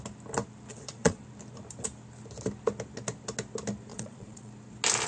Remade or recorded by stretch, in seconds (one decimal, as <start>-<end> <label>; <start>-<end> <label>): 0.0-0.7 recorded; 0.7-1.2 remade; 1.2-3.9 recorded; 3.9-4.5 remade; 4.5-5.1 recorded